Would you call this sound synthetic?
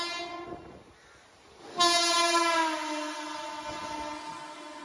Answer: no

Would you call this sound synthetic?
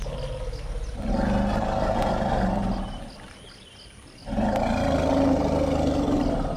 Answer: no